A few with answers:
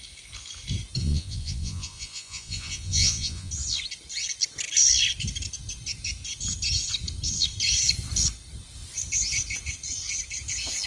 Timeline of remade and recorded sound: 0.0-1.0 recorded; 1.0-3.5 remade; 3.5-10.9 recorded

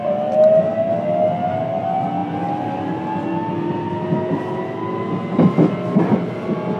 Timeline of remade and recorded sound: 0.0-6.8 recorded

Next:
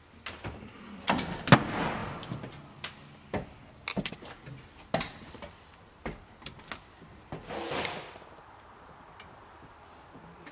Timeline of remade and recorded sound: 0.0-10.5 recorded

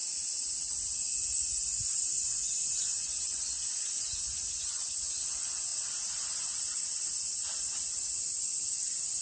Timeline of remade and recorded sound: 0.0-2.1 recorded; 2.1-5.7 remade; 5.7-8.4 recorded; 8.4-9.2 remade

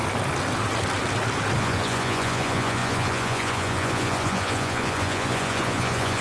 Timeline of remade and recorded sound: 0.0-1.6 recorded; 1.6-6.2 remade

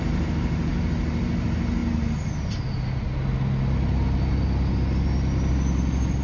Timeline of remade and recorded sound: 0.0-6.2 recorded

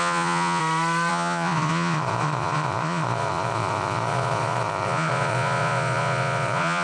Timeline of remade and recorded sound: 0.0-0.6 remade; 0.6-1.1 recorded; 1.1-6.8 remade

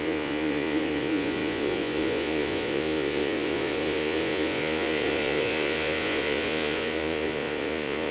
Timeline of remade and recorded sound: 0.0-8.1 remade